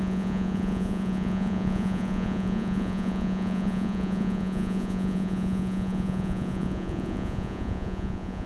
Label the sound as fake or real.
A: fake